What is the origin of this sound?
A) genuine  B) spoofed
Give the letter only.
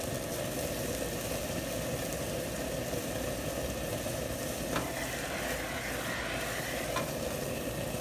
A